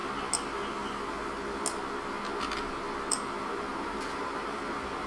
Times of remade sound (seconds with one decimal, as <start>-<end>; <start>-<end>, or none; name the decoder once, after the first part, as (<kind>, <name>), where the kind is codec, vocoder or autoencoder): 3.1-5.1 (vocoder, BigVGAN v2)